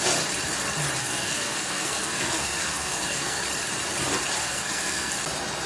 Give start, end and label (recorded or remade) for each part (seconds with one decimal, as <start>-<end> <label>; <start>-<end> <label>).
0.0-1.0 recorded; 1.0-3.4 remade; 3.4-4.4 recorded; 4.4-5.1 remade; 5.1-5.7 recorded